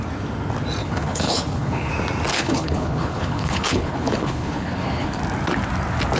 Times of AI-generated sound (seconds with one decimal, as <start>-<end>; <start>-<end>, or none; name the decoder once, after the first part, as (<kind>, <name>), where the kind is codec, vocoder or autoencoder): 0.8-1.9 (codec, HILCodec); 2.3-5.2